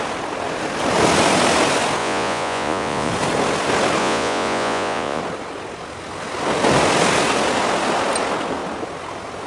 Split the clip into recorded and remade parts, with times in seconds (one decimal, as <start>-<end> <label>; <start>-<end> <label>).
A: 0.0-2.0 recorded; 2.0-3.1 remade; 3.1-4.0 recorded; 4.0-5.2 remade; 5.2-9.5 recorded